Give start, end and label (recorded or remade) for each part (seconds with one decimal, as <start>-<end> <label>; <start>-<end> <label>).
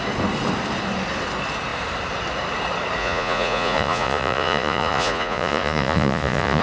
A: 0.0-3.0 recorded; 3.0-6.6 remade